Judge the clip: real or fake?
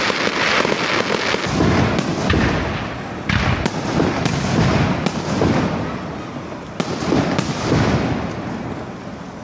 real